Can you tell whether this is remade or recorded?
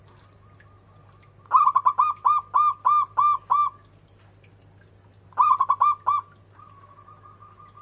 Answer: recorded